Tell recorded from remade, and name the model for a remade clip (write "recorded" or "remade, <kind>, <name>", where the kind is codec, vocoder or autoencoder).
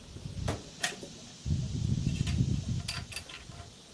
recorded